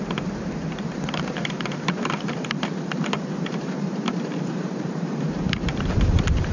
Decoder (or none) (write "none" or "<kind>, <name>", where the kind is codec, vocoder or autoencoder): vocoder, BigVGAN v2